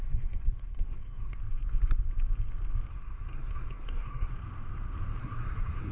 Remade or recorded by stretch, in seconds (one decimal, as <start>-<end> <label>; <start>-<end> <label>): 0.0-1.4 remade; 1.4-2.9 recorded; 2.9-4.3 remade; 4.3-5.2 recorded; 5.2-5.9 remade